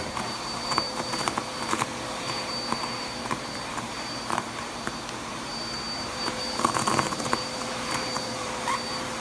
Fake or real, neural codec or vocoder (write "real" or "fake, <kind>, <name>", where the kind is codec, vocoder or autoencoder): fake, vocoder, BigVGAN v2